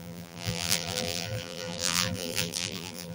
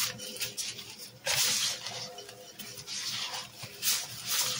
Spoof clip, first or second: first